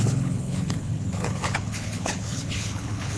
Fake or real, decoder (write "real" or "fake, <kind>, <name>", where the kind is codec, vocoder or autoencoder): fake, codec, HILCodec